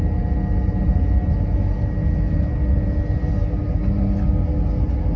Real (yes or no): yes